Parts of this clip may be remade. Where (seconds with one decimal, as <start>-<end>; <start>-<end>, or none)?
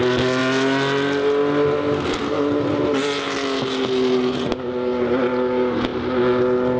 none